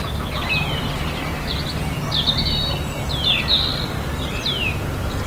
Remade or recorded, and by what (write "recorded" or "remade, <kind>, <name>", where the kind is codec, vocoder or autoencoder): recorded